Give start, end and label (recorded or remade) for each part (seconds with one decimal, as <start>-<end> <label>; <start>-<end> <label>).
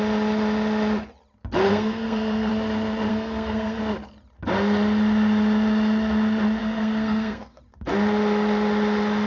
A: 0.0-1.7 recorded; 1.7-2.5 remade; 2.5-3.1 recorded; 3.1-3.8 remade; 3.8-6.6 recorded; 6.6-7.6 remade; 7.6-9.3 recorded